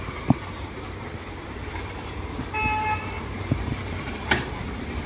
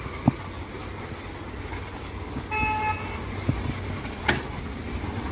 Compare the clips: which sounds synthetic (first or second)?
first